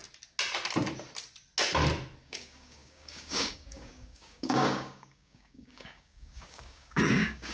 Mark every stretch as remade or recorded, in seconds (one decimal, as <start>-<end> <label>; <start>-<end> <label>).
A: 0.0-2.2 recorded; 2.2-7.5 remade